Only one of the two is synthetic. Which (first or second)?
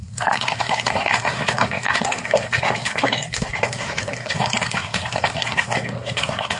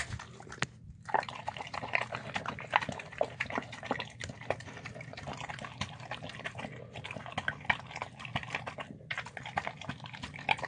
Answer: first